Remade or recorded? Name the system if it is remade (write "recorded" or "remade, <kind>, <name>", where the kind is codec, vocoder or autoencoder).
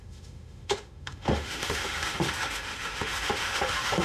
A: remade, autoencoder, DAC-VAE